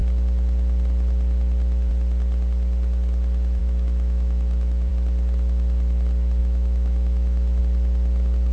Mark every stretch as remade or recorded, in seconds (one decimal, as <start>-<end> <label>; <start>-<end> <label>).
0.0-3.6 recorded; 3.6-4.9 remade; 4.9-6.4 recorded; 6.4-7.6 remade; 7.6-8.5 recorded